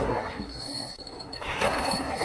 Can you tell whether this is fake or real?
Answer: fake